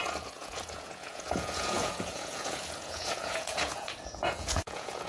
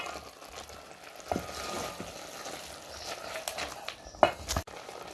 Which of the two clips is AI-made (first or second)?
first